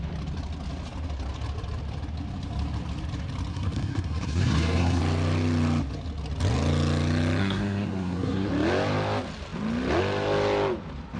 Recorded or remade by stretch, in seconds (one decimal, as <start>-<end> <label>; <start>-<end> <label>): 0.0-3.5 recorded; 3.5-5.0 remade; 5.0-7.4 recorded; 7.4-8.5 remade; 8.5-11.2 recorded